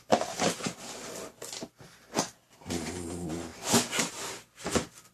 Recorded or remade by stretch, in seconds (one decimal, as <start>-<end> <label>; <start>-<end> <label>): 0.0-3.5 remade; 3.5-4.1 recorded; 4.1-5.1 remade